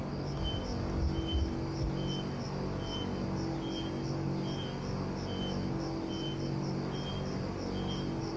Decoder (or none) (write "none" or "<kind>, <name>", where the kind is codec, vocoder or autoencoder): none